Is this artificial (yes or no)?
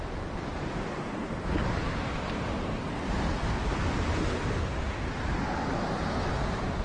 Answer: no